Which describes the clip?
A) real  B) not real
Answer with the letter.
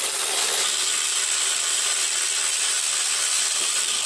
A